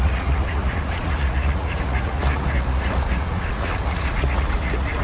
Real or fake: fake